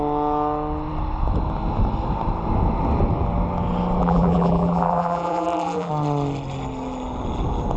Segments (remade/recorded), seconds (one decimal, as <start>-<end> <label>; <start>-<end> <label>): 0.0-4.0 recorded; 4.0-5.9 remade; 5.9-7.8 recorded